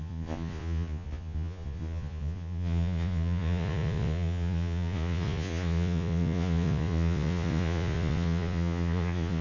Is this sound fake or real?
fake